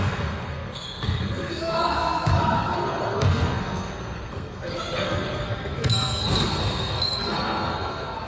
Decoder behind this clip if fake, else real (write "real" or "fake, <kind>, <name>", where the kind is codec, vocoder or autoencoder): fake, codec, SNAC